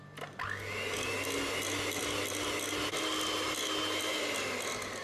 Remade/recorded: recorded